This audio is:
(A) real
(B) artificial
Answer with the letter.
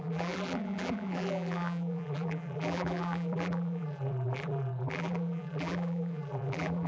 B